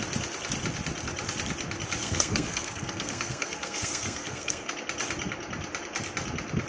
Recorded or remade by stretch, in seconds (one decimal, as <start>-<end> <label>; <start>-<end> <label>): 0.0-2.0 recorded; 2.0-4.7 remade; 4.7-6.7 recorded